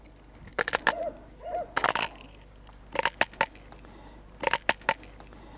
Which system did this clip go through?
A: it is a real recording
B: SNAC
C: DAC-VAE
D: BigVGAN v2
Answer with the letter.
A